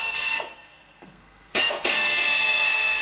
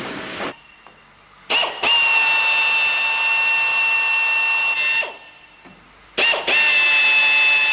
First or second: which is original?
second